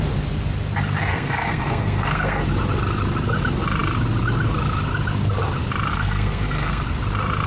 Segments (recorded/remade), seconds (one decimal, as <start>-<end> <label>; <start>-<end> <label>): 0.0-1.1 recorded; 1.1-2.4 remade; 2.4-5.9 recorded; 5.9-6.8 remade; 6.8-7.5 recorded